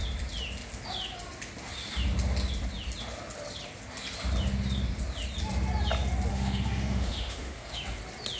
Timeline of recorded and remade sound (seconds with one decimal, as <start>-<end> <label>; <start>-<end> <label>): 0.0-6.3 recorded; 6.3-7.8 remade; 7.8-8.4 recorded